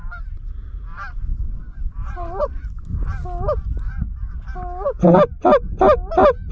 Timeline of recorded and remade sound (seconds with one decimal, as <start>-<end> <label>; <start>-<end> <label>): 0.0-1.3 recorded; 1.3-2.6 remade; 2.6-6.5 recorded